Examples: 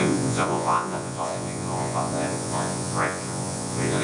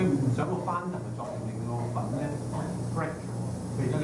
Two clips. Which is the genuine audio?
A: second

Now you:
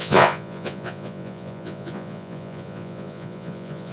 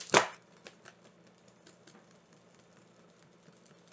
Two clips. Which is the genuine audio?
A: second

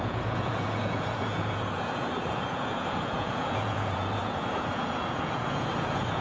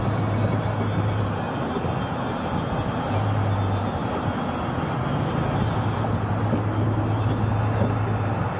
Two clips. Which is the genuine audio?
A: second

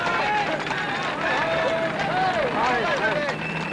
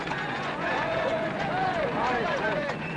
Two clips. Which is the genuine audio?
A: first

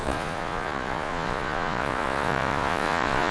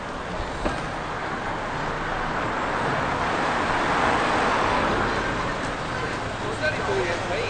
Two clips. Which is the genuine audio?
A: second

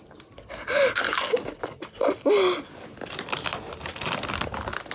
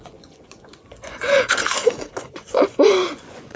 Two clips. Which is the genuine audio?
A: first